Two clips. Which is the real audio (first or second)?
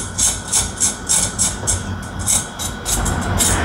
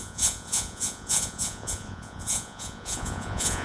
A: first